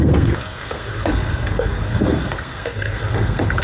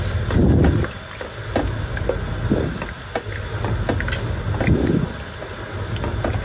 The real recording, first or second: second